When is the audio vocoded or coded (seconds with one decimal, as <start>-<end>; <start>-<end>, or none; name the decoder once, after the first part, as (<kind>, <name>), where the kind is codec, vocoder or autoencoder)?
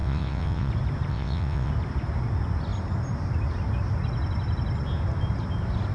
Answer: 0.0-0.7 (vocoder, WaveNeXt); 1.1-1.7